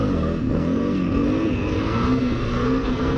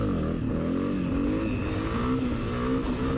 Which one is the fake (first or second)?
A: first